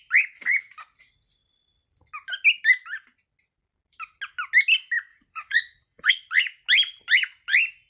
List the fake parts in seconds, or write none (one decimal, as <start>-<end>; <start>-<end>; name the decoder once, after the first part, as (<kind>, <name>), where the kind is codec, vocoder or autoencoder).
5.1-6.1 (vocoder, Vocos)